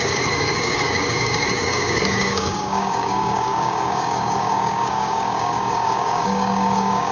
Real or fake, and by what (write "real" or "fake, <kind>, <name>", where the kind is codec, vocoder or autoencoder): fake, codec, DAC